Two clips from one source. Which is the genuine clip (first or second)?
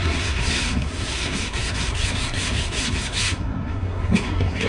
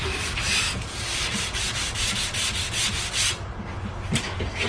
second